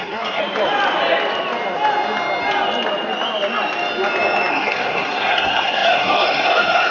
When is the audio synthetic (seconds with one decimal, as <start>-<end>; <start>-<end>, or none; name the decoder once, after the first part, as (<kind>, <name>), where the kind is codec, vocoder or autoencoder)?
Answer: 0.0-0.4 (codec, SNAC); 4.5-6.9